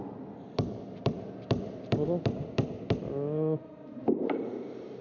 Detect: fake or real fake